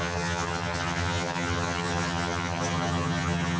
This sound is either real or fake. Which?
fake